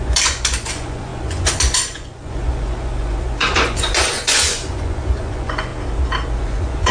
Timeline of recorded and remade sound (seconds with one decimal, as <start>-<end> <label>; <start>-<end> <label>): 0.0-5.7 remade; 5.7-6.4 recorded; 6.4-6.9 remade